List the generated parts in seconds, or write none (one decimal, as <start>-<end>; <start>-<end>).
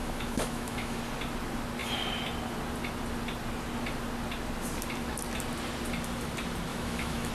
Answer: 0.0-1.0; 6.7-7.3